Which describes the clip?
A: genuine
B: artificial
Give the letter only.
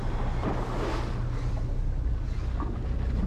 A